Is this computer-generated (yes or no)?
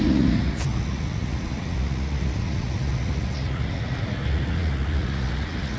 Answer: yes